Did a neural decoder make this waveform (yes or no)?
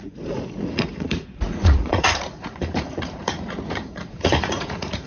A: yes